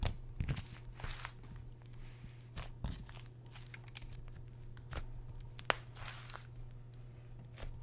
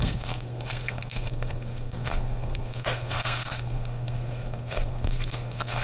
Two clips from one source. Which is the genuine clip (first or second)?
first